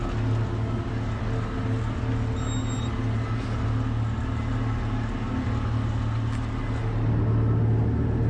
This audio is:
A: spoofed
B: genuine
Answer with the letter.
B